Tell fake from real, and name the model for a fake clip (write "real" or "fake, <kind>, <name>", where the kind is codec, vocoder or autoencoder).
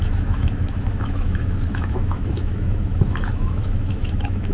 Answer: fake, autoencoder, DAC-VAE